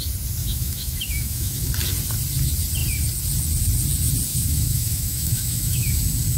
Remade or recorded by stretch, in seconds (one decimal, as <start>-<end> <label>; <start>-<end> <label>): 0.0-0.4 recorded; 0.4-1.7 remade; 1.7-4.3 recorded; 4.3-5.9 remade; 5.9-6.4 recorded